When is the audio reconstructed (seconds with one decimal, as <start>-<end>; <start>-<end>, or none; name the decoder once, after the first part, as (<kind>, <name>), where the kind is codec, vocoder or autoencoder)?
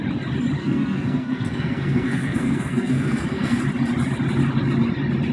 0.6-3.6 (codec, SNAC)